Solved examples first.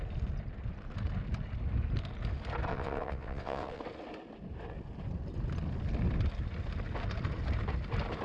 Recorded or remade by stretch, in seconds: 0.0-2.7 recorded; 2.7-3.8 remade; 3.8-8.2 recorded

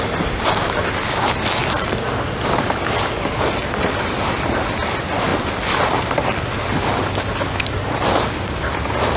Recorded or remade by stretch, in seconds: 0.0-1.6 recorded; 1.6-4.1 remade; 4.1-5.3 recorded; 5.3-9.2 remade

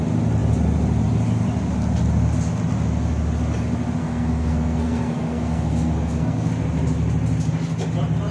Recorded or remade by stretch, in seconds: 0.0-4.0 recorded; 4.0-6.5 remade; 6.5-8.3 recorded

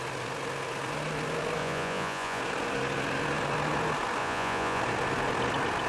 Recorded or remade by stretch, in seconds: 0.0-1.6 recorded; 1.6-2.4 remade; 2.4-4.2 recorded; 4.2-4.8 remade; 4.8-5.9 recorded

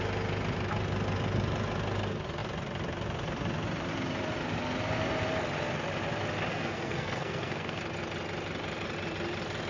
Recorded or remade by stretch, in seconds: 0.0-6.5 recorded; 6.5-7.8 remade; 7.8-9.7 recorded

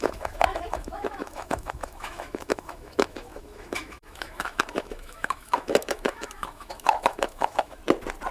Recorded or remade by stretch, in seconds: 0.0-7.8 remade; 7.8-8.3 recorded